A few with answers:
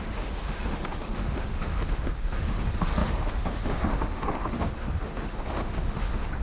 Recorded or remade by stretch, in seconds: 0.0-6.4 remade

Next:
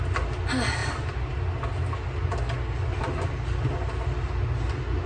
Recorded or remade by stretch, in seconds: 0.0-5.1 recorded

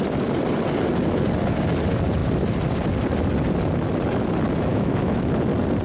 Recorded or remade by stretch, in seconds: 0.0-4.7 recorded; 4.7-5.3 remade; 5.3-5.8 recorded